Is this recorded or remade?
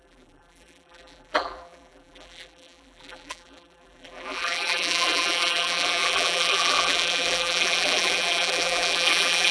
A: remade